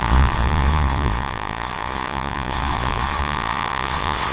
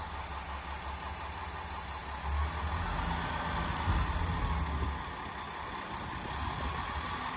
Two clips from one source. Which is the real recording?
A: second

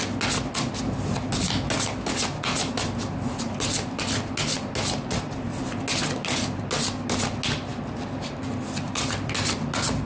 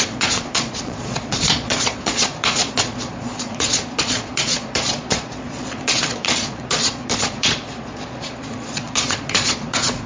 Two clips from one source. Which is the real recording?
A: first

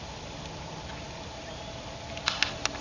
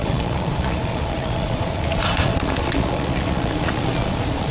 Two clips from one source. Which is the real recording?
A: first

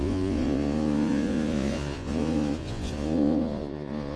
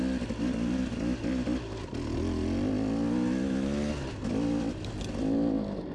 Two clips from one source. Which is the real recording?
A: second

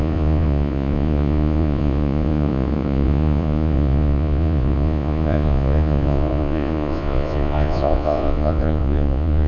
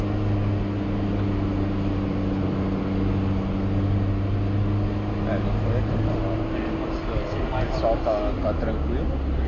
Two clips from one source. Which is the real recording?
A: second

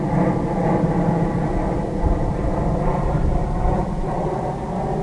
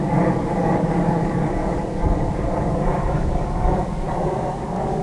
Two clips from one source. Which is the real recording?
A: first